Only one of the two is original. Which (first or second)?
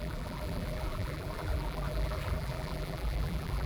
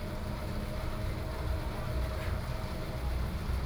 second